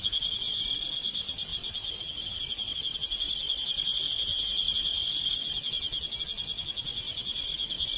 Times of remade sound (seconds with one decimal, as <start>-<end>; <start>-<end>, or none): 7.1-8.0